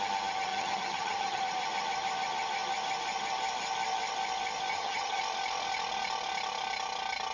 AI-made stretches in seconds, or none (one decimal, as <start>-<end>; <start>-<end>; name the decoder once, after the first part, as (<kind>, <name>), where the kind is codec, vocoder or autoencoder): 0.5-1.4 (vocoder, HiFi-GAN); 4.7-5.2